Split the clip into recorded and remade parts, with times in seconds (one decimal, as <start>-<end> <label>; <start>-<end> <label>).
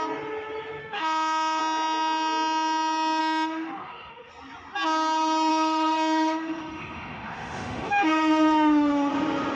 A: 0.0-0.8 recorded; 0.8-1.6 remade; 1.6-3.2 recorded; 3.2-4.3 remade; 4.3-5.5 recorded; 5.5-9.1 remade; 9.1-9.6 recorded